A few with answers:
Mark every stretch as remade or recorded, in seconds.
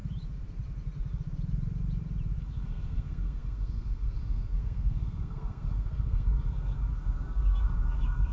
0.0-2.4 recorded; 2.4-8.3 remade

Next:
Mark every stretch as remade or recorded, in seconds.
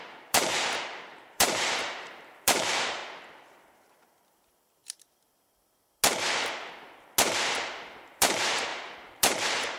0.0-3.0 remade; 3.0-3.5 recorded; 3.5-4.8 remade; 4.8-7.3 recorded; 7.3-9.8 remade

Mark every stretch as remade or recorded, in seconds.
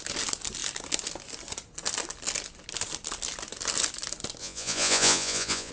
0.0-4.4 recorded; 4.4-5.7 remade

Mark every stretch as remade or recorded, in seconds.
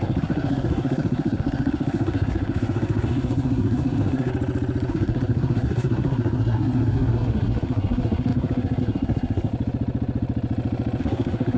0.0-4.3 remade; 4.3-4.9 recorded; 4.9-9.5 remade; 9.5-11.0 recorded; 11.0-11.6 remade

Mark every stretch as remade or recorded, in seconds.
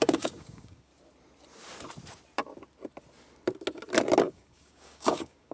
0.0-0.9 remade; 0.9-4.2 recorded; 4.2-5.5 remade